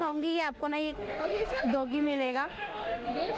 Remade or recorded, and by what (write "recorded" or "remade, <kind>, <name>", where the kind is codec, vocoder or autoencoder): remade, autoencoder, DAC-VAE